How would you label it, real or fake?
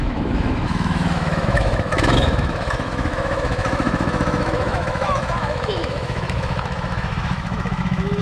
fake